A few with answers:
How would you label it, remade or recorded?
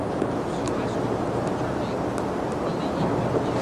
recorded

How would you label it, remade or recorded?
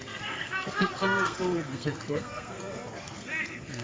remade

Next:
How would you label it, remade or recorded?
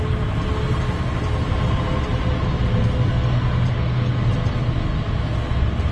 recorded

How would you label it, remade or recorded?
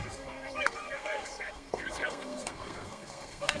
remade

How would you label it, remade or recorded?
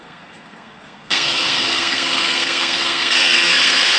remade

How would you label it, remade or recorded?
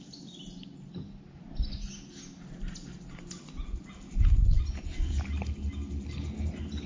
recorded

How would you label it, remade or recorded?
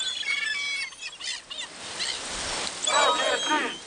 recorded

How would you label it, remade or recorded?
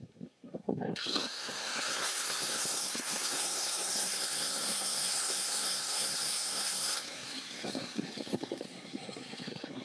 remade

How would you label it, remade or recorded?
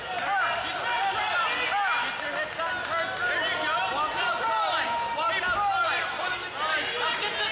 recorded